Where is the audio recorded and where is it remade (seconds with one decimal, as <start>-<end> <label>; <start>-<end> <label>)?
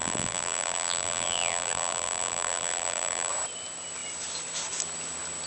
0.0-3.3 remade; 3.3-5.5 recorded